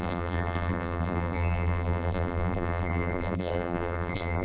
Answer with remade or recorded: remade